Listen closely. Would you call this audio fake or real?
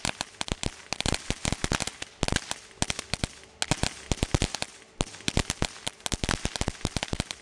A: real